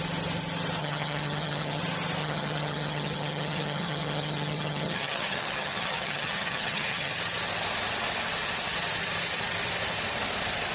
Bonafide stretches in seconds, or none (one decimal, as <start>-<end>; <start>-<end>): 0.0-0.8; 1.8-2.2; 7.1-10.7